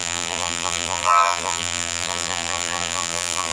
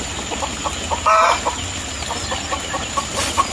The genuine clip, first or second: second